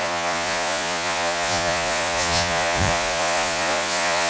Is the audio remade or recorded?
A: remade